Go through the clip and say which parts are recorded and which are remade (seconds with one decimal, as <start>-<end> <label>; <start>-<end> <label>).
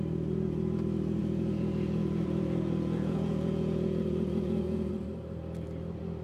0.0-1.2 recorded; 1.2-4.9 remade; 4.9-6.2 recorded